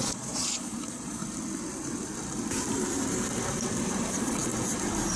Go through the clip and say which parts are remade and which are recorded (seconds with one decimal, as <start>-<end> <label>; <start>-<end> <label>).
0.0-1.2 remade; 1.2-4.1 recorded; 4.1-4.5 remade; 4.5-5.2 recorded